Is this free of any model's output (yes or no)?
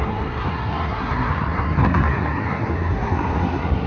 no